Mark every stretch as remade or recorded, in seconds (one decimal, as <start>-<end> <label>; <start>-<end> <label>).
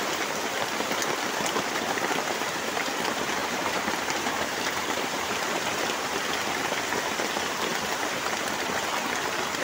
0.0-3.4 recorded; 3.4-5.4 remade; 5.4-9.6 recorded